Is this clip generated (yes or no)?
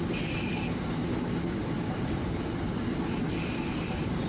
yes